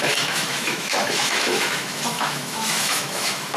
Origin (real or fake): fake